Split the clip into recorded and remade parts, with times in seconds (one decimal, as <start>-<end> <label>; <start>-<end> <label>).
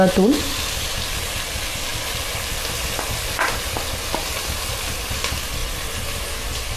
0.0-5.6 recorded; 5.6-6.2 remade; 6.2-6.8 recorded